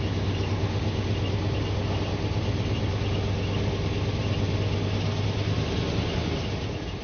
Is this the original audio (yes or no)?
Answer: yes